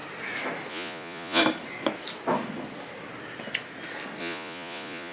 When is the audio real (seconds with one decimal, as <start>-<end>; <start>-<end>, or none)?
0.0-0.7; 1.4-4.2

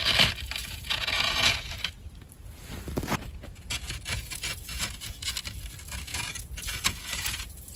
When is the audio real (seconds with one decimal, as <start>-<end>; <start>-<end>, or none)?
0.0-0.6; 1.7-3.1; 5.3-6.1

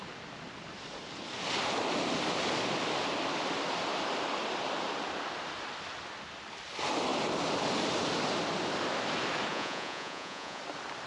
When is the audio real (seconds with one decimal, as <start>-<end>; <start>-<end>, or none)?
0.0-9.5; 10.6-11.1

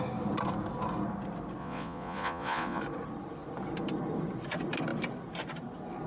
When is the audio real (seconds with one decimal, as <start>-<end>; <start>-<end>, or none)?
0.0-1.6; 2.8-6.1

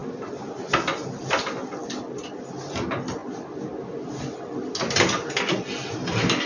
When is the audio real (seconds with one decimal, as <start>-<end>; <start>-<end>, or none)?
0.0-6.5